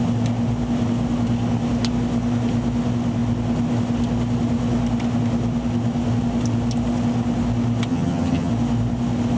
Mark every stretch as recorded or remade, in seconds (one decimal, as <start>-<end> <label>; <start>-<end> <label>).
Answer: 0.0-7.9 recorded; 7.9-8.5 remade; 8.5-9.4 recorded